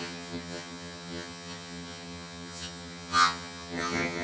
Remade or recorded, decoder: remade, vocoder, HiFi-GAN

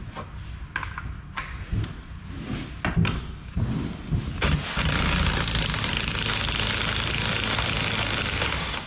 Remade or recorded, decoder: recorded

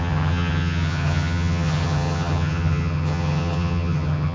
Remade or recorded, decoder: remade, vocoder, HiFi-GAN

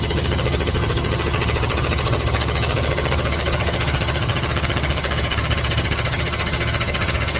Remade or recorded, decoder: remade, vocoder, HiFi-GAN